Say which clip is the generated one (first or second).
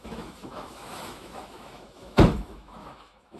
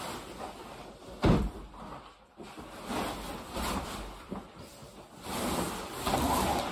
first